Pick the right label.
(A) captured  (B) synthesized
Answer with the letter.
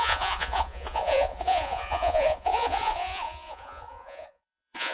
B